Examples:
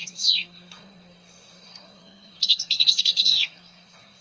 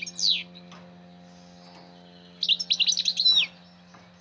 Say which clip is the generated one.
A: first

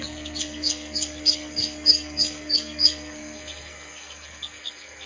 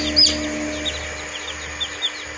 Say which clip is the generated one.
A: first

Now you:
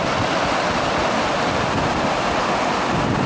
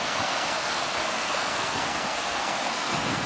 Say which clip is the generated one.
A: second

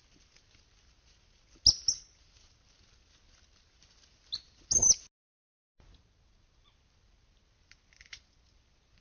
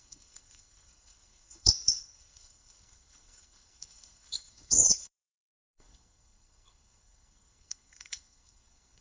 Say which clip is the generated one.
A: second